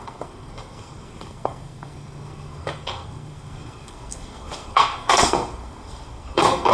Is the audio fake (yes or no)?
yes